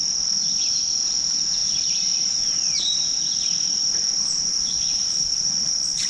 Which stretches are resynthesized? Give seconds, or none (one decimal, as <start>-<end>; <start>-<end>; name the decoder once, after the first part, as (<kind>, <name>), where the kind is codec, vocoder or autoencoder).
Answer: 4.5-6.1 (vocoder, Vocos)